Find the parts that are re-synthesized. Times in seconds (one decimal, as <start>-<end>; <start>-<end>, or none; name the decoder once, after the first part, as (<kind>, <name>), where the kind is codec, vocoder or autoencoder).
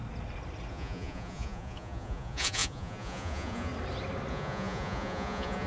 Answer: 0.7-3.7 (vocoder, Vocos); 4.3-5.7